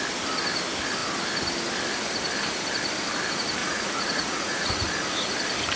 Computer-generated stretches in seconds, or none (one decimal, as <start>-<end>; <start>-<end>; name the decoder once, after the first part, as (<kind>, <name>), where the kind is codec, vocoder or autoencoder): 3.6-4.7 (vocoder, Vocos)

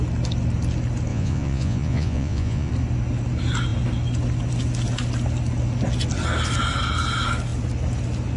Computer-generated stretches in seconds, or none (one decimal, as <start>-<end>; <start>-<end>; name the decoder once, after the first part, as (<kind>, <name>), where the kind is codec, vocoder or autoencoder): 1.1-2.7 (vocoder, Vocos)

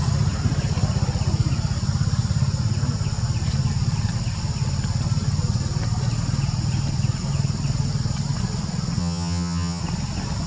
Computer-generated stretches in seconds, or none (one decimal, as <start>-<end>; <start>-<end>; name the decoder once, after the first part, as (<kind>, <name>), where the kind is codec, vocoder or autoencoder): 9.0-9.8 (vocoder, HiFi-GAN)